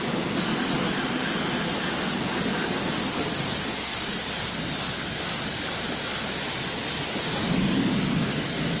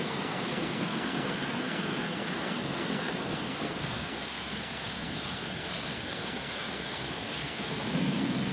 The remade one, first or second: second